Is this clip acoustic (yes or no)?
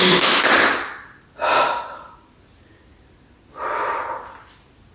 yes